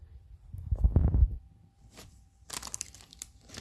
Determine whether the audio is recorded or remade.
remade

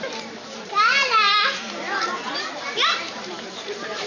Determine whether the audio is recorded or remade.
remade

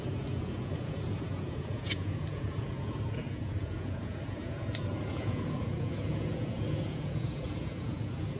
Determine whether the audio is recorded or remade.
remade